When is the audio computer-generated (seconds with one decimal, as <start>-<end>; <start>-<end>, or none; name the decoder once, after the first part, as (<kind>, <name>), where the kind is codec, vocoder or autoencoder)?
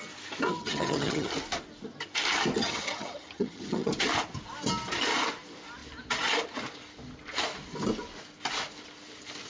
0.5-1.3 (vocoder, HiFi-GAN); 2.6-3.9